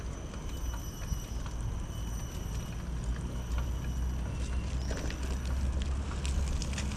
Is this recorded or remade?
recorded